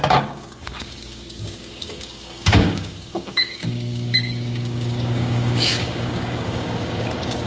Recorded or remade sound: remade